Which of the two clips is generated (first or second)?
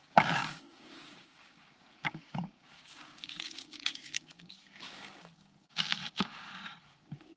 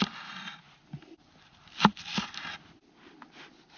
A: first